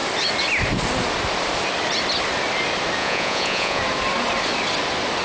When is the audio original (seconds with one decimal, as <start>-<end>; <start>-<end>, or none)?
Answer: 0.0-3.0; 3.8-5.2

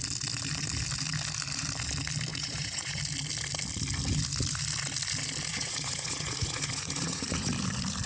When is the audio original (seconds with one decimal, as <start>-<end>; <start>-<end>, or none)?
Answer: 0.0-2.3; 3.0-5.5; 7.5-8.1

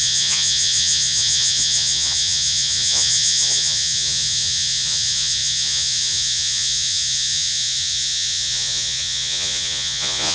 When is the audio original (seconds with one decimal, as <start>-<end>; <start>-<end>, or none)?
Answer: none

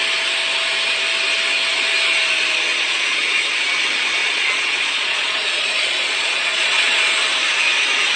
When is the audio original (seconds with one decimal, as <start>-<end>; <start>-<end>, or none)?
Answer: 0.0-2.7; 3.2-4.2; 7.0-8.2

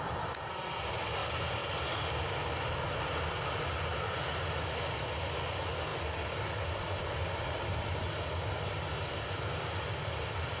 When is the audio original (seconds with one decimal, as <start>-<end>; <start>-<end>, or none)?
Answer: 0.0-10.6

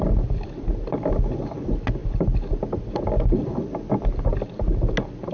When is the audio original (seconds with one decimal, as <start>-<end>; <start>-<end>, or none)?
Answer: 0.0-5.3

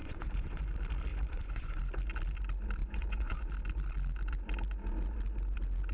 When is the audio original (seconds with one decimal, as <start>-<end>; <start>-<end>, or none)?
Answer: 0.6-1.1; 1.8-2.8; 3.5-5.9

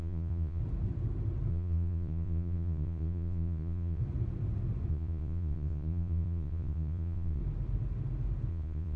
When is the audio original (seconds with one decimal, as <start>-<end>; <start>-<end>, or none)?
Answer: 0.6-1.5; 4.0-4.9; 7.4-8.5